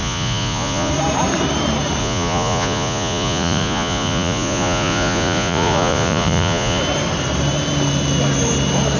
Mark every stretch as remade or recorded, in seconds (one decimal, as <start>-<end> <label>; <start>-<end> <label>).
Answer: 0.0-0.9 remade; 0.9-2.0 recorded; 2.0-6.8 remade; 6.8-9.0 recorded